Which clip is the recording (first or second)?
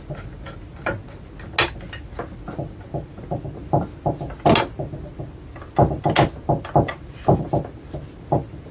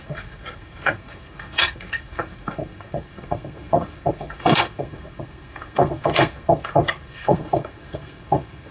first